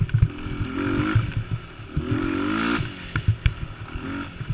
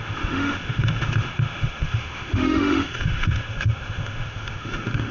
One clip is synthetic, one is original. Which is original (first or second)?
first